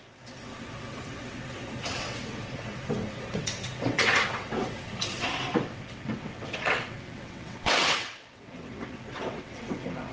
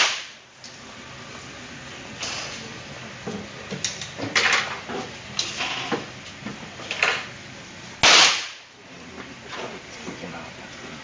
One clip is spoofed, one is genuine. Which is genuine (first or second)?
second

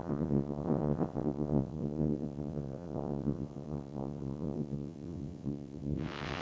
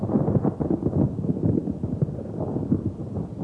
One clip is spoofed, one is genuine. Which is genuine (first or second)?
second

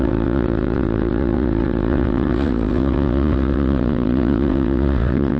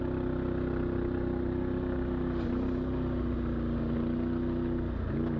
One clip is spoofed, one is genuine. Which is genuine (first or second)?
second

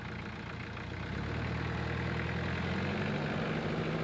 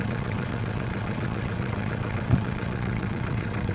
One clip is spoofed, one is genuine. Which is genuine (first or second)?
first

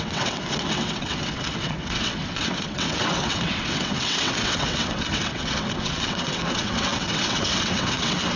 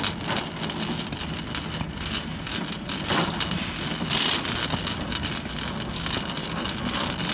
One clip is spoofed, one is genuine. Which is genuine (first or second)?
second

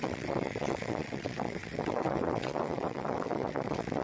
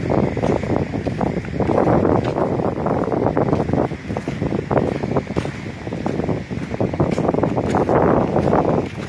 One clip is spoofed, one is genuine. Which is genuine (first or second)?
second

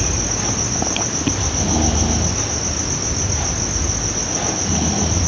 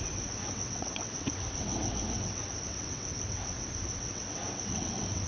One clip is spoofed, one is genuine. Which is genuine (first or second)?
first